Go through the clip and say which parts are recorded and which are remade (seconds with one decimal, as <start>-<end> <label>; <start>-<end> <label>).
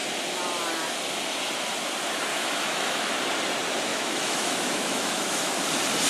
0.0-2.3 recorded; 2.3-3.1 remade; 3.1-3.9 recorded; 3.9-5.5 remade; 5.5-6.1 recorded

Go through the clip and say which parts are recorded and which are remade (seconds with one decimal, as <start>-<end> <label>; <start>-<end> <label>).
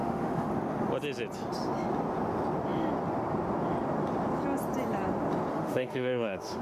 0.0-0.5 remade; 0.5-5.5 recorded; 5.5-6.6 remade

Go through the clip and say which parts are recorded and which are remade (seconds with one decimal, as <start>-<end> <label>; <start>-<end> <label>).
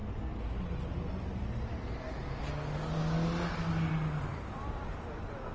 0.0-5.5 recorded